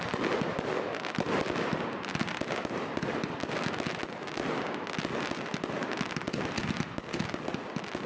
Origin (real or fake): real